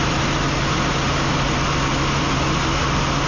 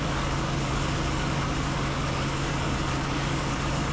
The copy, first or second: second